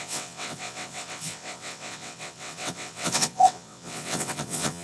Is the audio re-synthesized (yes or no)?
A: yes